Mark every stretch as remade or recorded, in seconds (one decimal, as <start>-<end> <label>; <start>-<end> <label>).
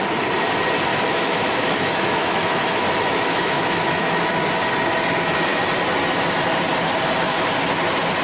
0.0-0.9 recorded; 0.9-4.5 remade; 4.5-8.2 recorded